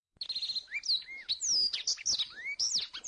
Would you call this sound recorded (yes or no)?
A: yes